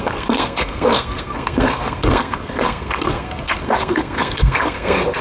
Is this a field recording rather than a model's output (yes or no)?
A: no